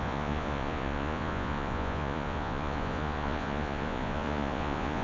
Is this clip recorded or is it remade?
remade